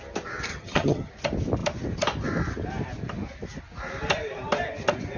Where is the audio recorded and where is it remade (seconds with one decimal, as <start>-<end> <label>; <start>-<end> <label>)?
0.0-0.5 recorded; 0.5-1.1 remade; 1.1-5.2 recorded